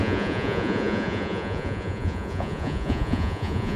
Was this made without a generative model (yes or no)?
no